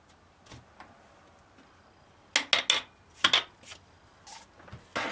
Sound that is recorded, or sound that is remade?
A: recorded